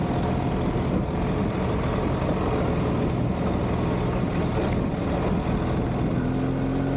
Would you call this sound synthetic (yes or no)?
no